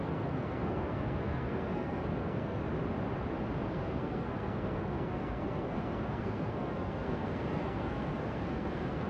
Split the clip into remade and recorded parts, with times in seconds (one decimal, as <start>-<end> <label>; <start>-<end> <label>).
0.0-2.6 remade; 2.6-3.7 recorded; 3.7-9.1 remade